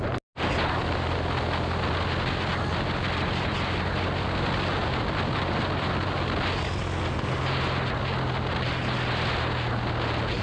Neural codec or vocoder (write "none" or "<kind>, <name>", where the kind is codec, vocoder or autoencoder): none